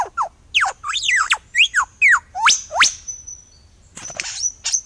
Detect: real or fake real